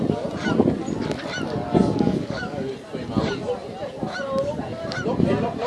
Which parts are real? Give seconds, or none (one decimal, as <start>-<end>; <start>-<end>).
0.0-1.8; 2.7-5.7